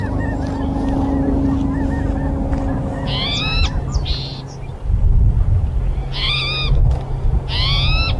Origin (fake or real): real